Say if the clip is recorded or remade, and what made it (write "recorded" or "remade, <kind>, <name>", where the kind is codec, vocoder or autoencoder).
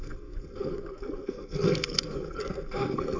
remade, codec, SNAC